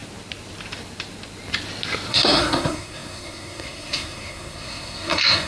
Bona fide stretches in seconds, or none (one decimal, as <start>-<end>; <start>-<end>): 0.0-2.1